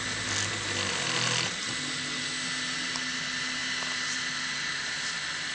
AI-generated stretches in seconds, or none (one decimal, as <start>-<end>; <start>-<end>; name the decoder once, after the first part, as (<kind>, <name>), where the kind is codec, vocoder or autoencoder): none